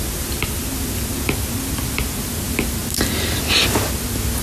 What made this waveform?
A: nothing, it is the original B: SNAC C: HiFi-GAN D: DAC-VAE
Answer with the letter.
A